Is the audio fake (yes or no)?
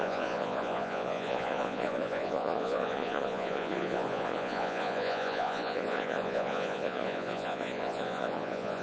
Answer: yes